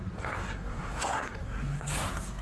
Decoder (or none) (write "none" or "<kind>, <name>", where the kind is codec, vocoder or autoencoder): codec, SNAC